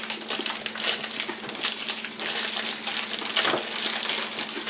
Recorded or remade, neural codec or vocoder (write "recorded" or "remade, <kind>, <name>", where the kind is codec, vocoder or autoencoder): recorded